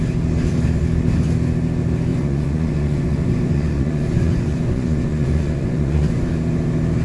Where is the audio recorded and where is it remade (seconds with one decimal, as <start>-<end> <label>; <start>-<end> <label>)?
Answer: 0.0-2.1 recorded; 2.1-6.3 remade; 6.3-7.0 recorded